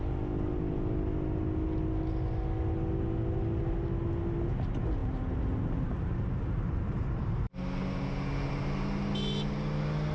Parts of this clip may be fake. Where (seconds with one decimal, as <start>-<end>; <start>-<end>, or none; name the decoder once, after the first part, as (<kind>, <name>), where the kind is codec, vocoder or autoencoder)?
5.0-7.5 (vocoder, BigVGAN v2)